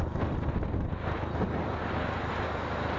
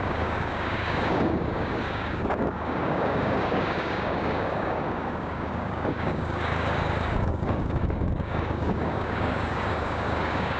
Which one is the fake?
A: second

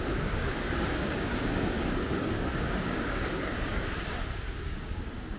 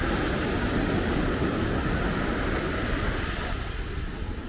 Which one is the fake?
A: first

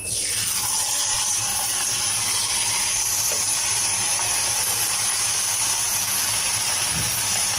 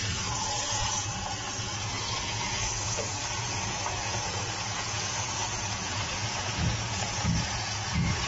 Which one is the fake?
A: second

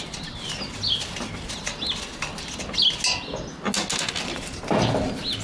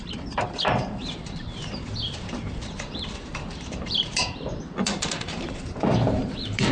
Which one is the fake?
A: second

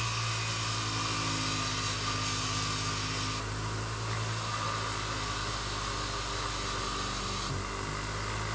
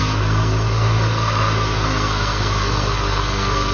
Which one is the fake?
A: second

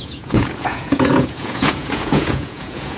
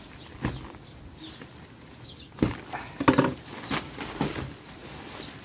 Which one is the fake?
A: first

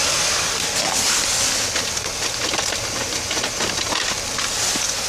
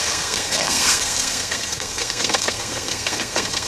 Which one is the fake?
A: second